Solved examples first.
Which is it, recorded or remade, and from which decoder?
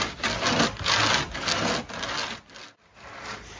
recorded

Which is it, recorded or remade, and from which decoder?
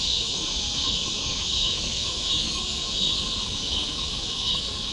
remade, codec, SNAC